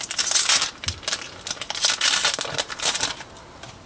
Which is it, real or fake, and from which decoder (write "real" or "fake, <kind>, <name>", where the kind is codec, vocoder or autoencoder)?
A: real